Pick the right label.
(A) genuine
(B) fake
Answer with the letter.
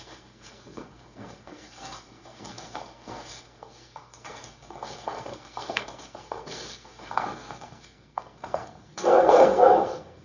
B